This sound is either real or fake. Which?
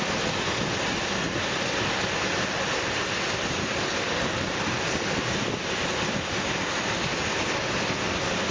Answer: real